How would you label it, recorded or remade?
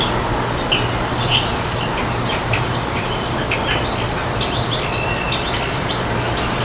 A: recorded